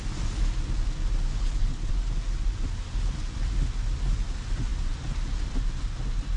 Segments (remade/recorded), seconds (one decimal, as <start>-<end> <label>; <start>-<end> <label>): 0.0-1.3 recorded; 1.3-1.9 remade; 1.9-6.4 recorded